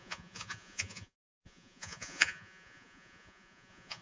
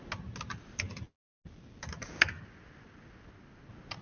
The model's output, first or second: first